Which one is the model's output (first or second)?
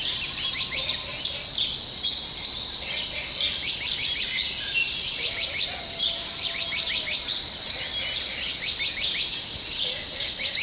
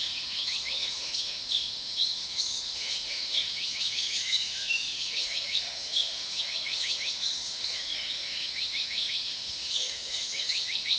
second